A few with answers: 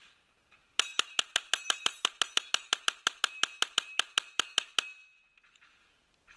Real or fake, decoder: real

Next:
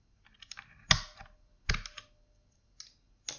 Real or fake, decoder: real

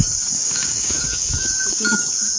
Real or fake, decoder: fake, codec, DAC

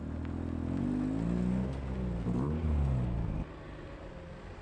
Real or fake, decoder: real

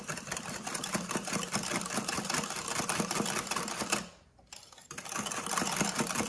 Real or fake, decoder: real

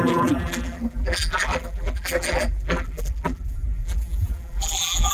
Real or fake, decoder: fake, vocoder, BigVGAN v2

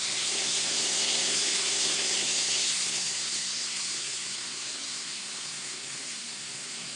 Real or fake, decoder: fake, codec, SNAC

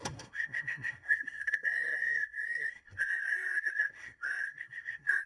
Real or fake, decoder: fake, codec, SNAC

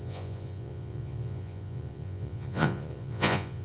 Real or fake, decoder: fake, vocoder, Vocos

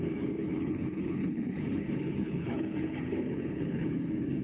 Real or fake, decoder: fake, codec, HILCodec